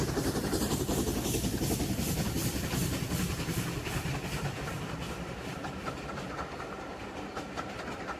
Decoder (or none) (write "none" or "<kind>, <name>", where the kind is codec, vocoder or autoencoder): none